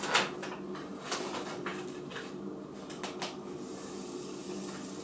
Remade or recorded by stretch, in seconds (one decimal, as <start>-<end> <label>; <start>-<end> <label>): 0.0-5.0 recorded